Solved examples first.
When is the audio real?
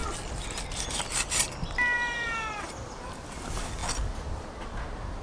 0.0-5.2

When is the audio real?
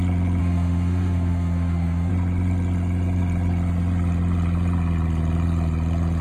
0.0-0.4; 2.1-6.2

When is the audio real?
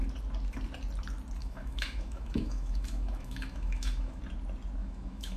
0.0-1.4; 4.2-4.8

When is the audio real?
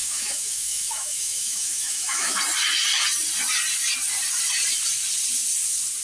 2.4-6.0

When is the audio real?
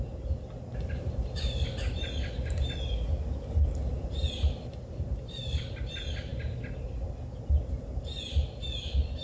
0.0-9.2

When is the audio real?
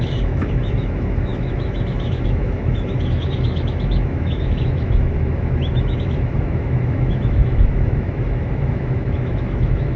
none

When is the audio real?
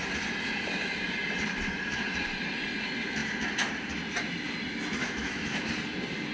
0.0-5.0; 5.7-6.3